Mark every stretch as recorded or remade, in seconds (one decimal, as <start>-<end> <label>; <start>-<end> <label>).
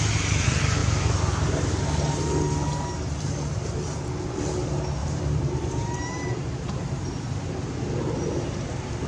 0.0-5.0 recorded; 5.0-6.5 remade; 6.5-9.1 recorded